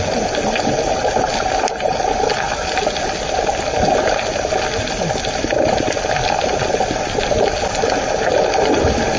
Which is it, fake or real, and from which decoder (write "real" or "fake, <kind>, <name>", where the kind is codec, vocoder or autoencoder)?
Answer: real